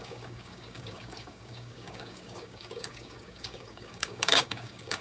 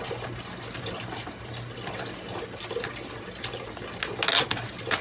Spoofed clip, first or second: first